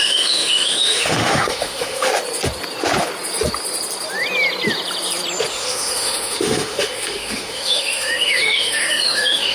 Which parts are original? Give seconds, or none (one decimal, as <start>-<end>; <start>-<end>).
2.1-5.5